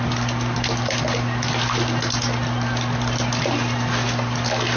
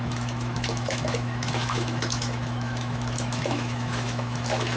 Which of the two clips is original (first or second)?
first